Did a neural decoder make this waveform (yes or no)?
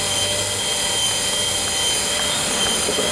no